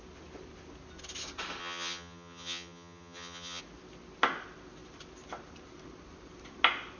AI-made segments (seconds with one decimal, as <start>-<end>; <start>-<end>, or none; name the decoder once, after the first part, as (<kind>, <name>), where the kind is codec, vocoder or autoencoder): 1.6-3.6 (vocoder, HiFi-GAN)